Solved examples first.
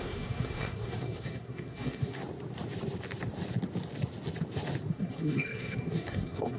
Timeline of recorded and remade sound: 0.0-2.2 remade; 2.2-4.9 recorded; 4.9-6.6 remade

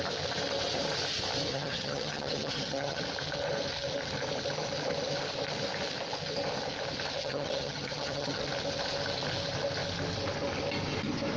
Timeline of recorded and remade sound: 0.0-1.5 recorded; 1.5-3.0 remade; 3.0-7.2 recorded; 7.2-8.4 remade; 8.4-11.4 recorded

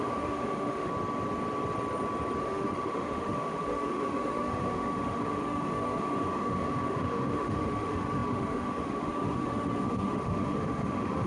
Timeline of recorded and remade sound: 0.0-0.9 remade; 0.9-2.4 recorded; 2.4-11.3 remade

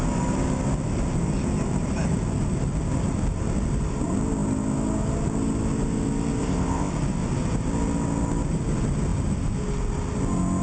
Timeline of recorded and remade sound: 0.0-6.4 recorded; 6.4-6.9 remade; 6.9-10.6 recorded

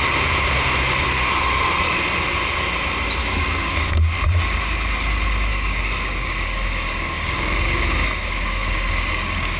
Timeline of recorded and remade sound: 0.0-3.2 recorded; 3.2-4.4 remade; 4.4-5.5 recorded; 5.5-9.6 remade

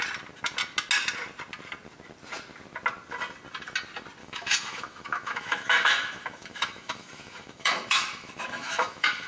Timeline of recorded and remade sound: 0.0-4.2 recorded; 4.2-9.3 remade

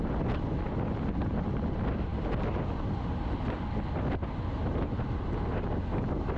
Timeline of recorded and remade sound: 0.0-6.4 recorded

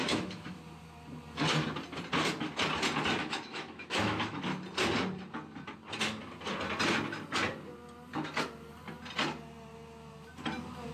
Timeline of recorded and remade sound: 0.0-0.6 remade; 0.6-3.2 recorded; 3.2-4.4 remade; 4.4-10.9 recorded